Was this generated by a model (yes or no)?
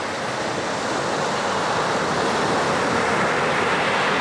no